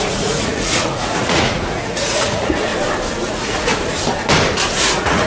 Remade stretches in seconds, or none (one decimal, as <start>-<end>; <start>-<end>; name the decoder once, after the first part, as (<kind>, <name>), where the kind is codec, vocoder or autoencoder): 0.0-2.7 (vocoder, Vocos); 3.3-3.7; 4.8-5.3